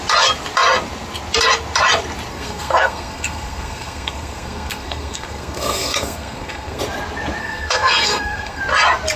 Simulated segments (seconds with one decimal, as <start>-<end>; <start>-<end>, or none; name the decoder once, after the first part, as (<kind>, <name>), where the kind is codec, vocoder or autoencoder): 2.3-6.8 (codec, SNAC); 7.4-8.6